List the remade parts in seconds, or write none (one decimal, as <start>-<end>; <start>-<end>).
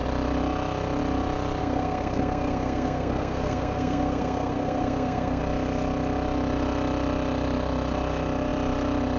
1.6-5.4